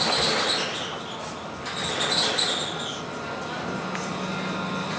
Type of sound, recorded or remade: recorded